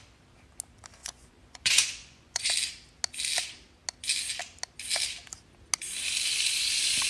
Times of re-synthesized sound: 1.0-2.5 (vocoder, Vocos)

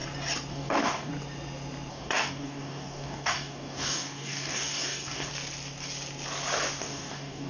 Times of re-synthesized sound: 0.5-1.1 (codec, DAC); 1.9-5.3; 6.8-7.5